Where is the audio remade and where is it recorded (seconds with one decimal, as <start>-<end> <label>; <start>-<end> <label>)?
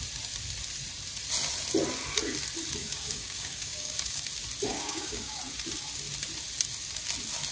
0.0-2.8 recorded; 2.8-4.2 remade; 4.2-4.7 recorded; 4.7-5.4 remade; 5.4-7.5 recorded